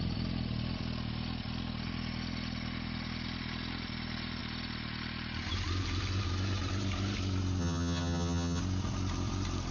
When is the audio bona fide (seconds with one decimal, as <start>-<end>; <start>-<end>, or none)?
0.0-7.6; 8.6-9.7